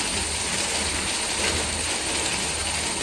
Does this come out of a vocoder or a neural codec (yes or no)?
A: no